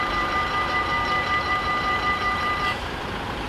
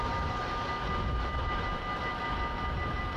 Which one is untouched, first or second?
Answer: second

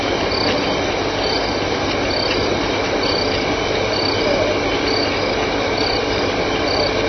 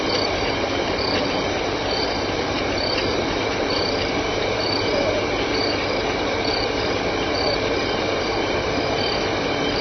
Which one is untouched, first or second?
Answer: first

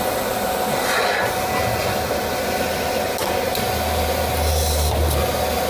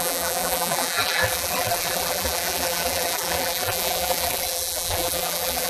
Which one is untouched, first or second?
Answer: first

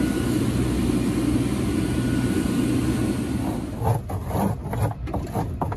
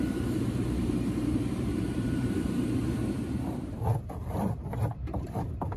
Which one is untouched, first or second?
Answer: first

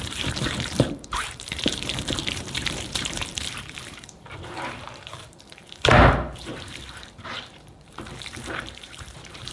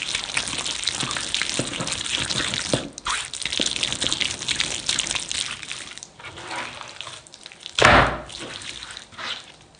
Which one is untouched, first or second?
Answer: second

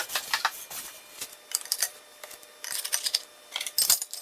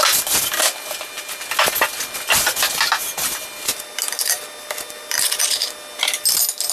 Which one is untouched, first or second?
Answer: second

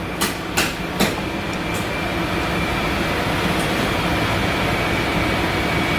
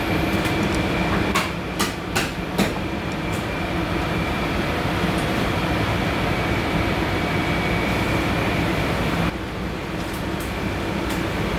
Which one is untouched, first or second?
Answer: first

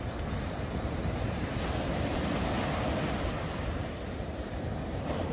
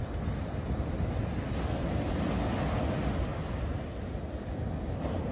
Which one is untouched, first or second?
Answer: second